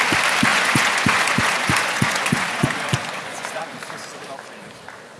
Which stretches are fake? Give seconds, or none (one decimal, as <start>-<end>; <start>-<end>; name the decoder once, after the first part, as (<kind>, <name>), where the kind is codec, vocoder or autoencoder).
0.5-3.6 (vocoder, Vocos)